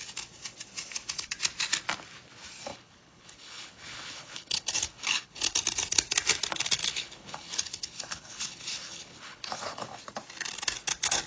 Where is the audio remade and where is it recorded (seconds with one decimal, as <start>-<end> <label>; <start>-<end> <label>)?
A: 0.0-2.7 recorded; 2.7-5.4 remade; 5.4-6.8 recorded; 6.8-10.0 remade; 10.0-11.3 recorded